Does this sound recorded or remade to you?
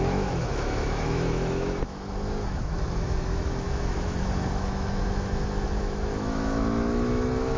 remade